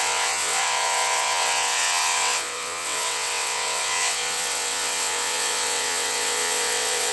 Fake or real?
fake